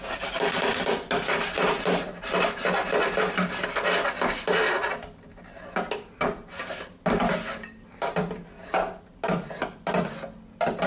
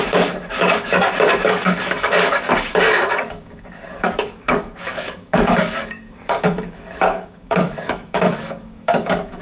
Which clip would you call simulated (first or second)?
second